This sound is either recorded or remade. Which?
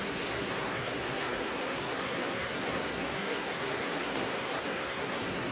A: remade